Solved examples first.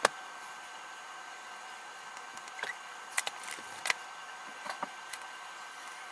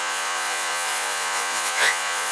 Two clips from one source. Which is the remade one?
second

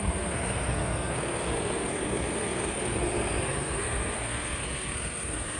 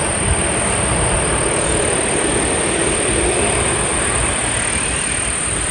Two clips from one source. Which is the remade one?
first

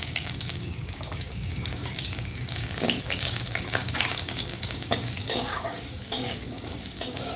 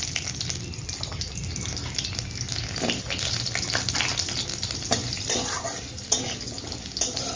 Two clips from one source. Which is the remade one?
first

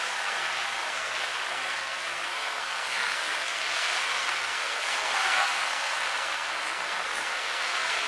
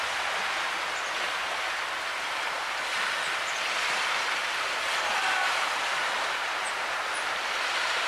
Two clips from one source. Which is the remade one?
first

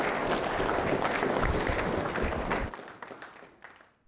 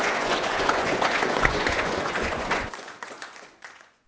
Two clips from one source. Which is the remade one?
second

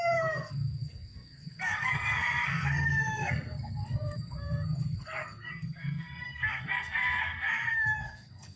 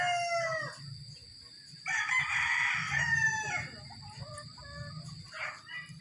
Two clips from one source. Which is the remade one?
first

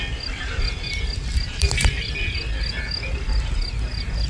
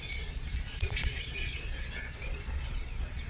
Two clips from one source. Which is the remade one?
second